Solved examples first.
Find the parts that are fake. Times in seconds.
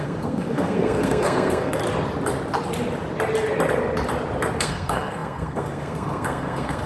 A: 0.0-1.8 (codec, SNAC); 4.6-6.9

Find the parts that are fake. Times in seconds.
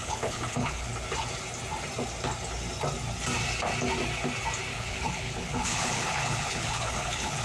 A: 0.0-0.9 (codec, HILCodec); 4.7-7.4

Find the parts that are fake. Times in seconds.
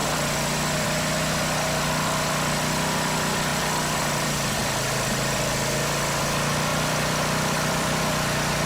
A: 0.0-1.0 (vocoder, BigVGAN v2); 3.5-5.8; 6.7-8.0